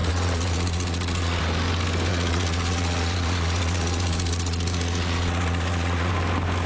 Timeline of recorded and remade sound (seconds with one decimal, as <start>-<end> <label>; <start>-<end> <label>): 0.0-1.4 remade; 1.4-2.1 recorded; 2.1-6.1 remade; 6.1-6.7 recorded